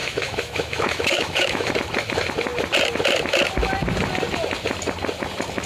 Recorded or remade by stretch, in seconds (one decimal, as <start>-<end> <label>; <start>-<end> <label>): 0.0-1.7 remade; 1.7-5.7 recorded